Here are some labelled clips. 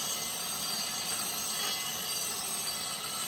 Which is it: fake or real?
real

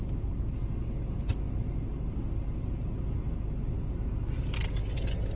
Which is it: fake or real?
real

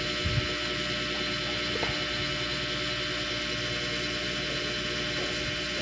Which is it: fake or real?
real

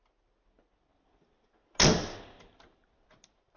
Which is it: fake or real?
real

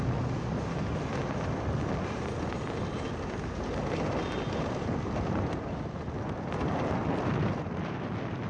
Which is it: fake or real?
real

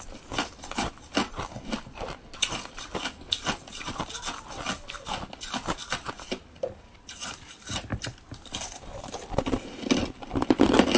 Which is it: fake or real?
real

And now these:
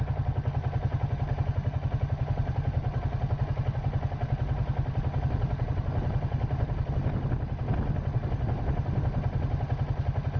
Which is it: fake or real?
real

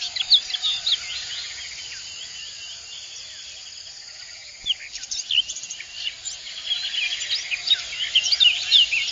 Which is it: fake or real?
real